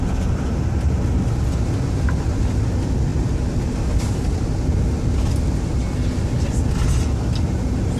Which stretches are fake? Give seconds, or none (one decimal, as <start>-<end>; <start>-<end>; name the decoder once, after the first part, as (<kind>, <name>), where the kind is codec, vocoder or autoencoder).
none